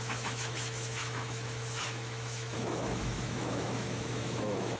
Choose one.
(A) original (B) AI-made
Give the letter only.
B